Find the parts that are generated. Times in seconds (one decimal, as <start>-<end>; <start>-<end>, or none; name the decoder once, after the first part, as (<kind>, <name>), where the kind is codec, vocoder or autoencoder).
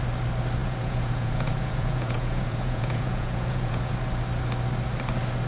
0.6-3.9 (vocoder, Vocos)